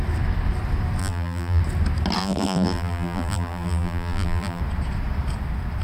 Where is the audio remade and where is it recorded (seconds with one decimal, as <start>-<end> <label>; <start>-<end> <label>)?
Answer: 0.0-1.0 recorded; 1.0-1.6 remade; 1.6-2.2 recorded; 2.2-4.6 remade; 4.6-5.8 recorded